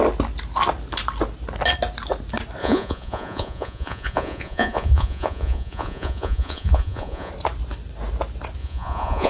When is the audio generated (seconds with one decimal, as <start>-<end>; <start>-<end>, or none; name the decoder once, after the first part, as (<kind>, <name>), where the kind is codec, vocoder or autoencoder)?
2.6-7.3 (vocoder, Vocos); 8.6-9.3